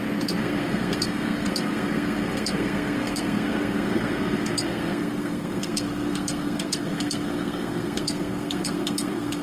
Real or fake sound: fake